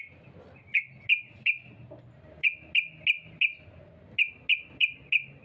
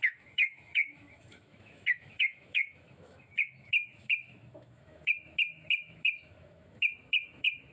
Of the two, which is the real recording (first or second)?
first